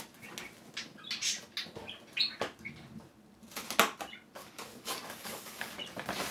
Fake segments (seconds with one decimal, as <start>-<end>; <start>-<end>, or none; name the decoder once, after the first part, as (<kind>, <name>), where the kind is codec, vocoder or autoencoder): 4.4-5.7 (codec, DAC)